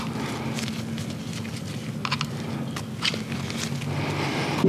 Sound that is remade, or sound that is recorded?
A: recorded